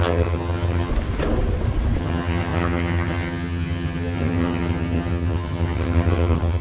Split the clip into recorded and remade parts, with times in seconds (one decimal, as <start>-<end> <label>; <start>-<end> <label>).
0.0-0.9 remade; 0.9-2.0 recorded; 2.0-6.6 remade